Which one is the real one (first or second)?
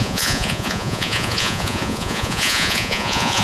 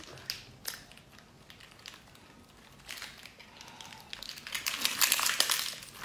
second